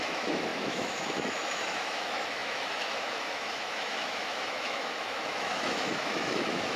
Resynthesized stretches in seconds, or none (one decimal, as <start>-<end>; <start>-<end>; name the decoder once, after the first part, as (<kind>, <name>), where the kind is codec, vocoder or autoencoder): 0.0-6.8 (autoencoder, DAC-VAE)